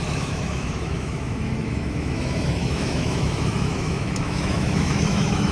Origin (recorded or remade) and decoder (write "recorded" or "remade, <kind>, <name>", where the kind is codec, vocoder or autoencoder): remade, autoencoder, DAC-VAE